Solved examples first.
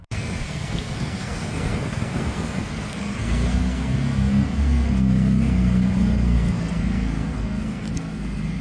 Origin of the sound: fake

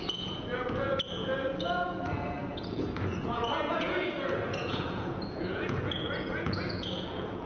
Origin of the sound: fake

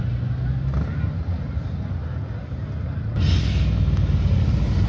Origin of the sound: real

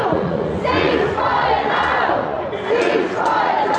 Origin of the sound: fake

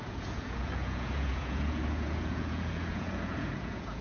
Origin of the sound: fake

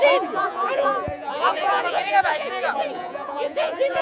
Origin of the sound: fake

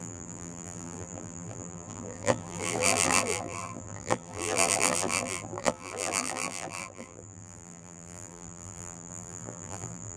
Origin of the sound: fake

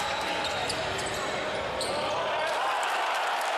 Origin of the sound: real